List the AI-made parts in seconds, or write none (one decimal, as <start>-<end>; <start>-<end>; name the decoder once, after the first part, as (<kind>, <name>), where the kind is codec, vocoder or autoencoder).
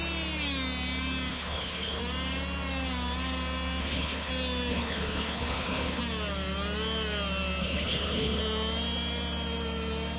1.3-2.0 (codec, HILCodec); 3.8-4.3; 4.7-6.0; 7.6-8.4